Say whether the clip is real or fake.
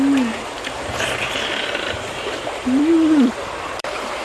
fake